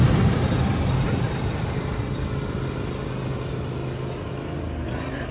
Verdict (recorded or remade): recorded